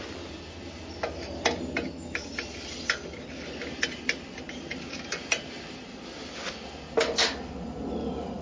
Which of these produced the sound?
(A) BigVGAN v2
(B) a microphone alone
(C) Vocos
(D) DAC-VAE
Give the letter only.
B